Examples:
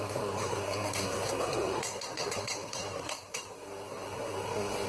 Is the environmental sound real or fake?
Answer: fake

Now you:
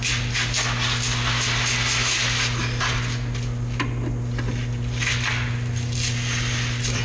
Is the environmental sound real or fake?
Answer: real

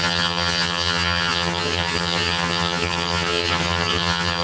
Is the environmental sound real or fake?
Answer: fake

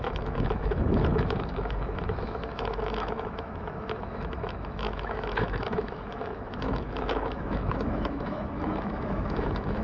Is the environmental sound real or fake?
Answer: fake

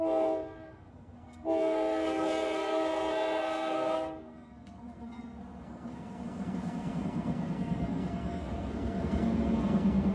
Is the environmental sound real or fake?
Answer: fake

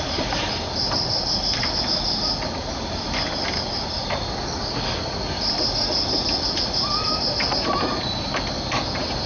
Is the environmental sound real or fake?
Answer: real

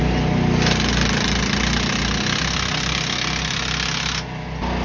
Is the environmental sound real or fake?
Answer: real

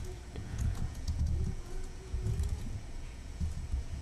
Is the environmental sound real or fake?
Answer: fake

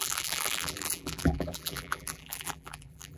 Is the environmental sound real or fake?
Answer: fake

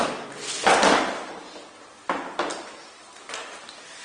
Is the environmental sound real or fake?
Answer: real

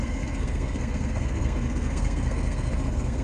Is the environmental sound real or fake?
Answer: fake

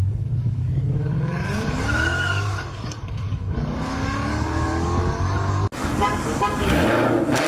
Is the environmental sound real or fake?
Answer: fake